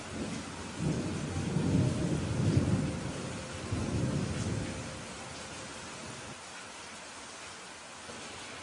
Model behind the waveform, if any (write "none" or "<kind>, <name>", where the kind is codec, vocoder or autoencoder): none